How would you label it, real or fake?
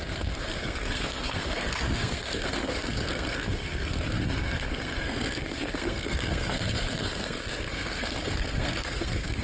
fake